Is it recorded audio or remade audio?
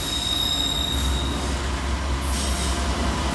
recorded